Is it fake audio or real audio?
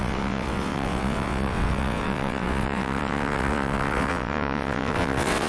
fake